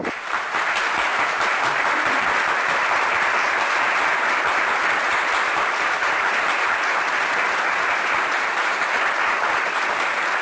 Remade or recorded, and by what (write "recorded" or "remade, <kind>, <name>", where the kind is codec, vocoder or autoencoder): recorded